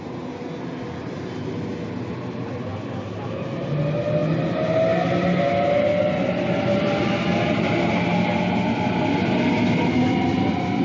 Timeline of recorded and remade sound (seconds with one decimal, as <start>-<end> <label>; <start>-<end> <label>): 0.0-10.8 recorded

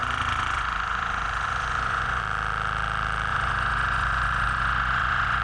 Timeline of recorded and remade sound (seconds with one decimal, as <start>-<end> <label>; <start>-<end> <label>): 0.0-2.2 remade; 2.2-3.3 recorded; 3.3-5.4 remade

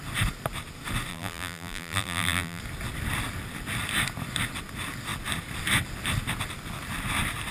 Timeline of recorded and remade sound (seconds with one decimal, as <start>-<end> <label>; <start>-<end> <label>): 0.0-1.1 recorded; 1.1-2.6 remade; 2.6-7.5 recorded

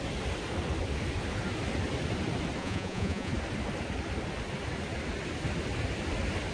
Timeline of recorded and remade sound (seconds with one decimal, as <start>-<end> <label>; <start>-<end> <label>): 0.0-2.6 recorded; 2.6-3.3 remade; 3.3-6.5 recorded

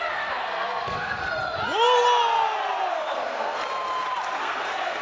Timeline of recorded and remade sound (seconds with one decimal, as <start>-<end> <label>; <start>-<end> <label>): 0.0-1.2 remade; 1.2-2.9 recorded; 2.9-3.6 remade; 3.6-4.4 recorded; 4.4-5.0 remade

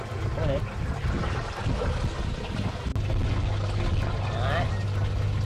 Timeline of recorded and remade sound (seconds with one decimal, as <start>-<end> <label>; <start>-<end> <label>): 0.0-5.5 recorded